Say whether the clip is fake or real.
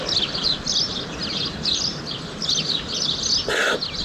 real